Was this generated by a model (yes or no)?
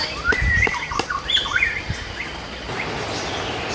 no